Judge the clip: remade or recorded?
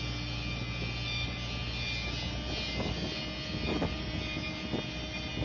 recorded